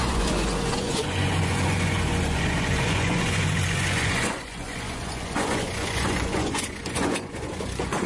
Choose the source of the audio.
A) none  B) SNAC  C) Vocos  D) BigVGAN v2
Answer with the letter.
C